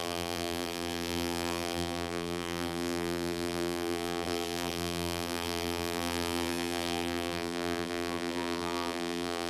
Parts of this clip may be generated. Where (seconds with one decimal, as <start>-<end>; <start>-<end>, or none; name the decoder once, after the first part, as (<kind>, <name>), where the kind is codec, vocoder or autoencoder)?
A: 0.0-9.5 (vocoder, BigVGAN v2)